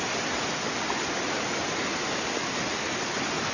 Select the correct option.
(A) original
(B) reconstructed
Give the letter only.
A